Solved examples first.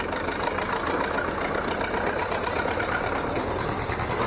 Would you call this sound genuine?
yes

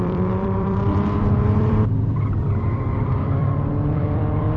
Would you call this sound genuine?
no